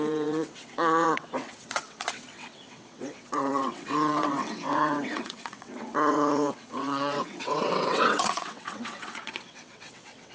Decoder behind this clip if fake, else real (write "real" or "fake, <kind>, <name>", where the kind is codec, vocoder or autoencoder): fake, vocoder, WaveNeXt